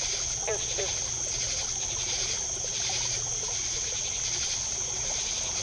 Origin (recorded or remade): recorded